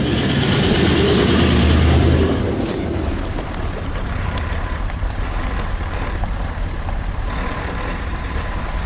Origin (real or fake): fake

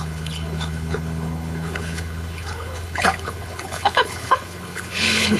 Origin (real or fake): fake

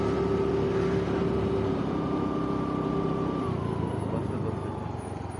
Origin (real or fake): real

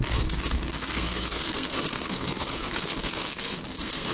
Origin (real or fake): fake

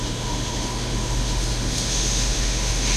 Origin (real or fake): fake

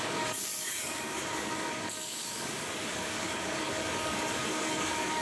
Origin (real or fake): fake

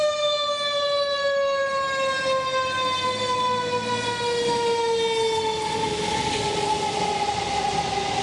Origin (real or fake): real